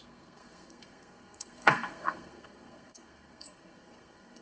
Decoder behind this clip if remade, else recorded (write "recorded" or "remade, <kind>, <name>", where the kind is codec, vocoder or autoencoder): remade, codec, SNAC